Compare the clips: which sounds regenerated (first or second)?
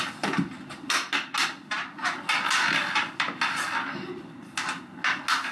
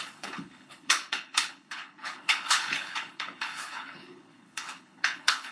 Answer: second